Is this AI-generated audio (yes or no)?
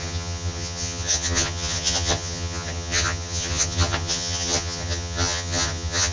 yes